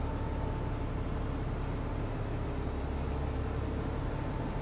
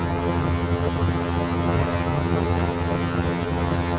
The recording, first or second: first